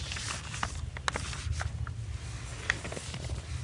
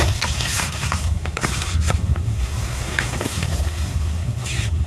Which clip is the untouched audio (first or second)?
first